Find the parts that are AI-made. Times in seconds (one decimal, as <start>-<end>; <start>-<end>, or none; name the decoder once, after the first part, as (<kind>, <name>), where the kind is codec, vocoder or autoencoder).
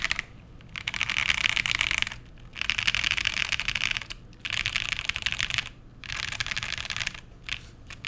none